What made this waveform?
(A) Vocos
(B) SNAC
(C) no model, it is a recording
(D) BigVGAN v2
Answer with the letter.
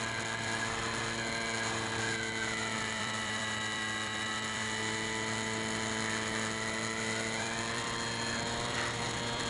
D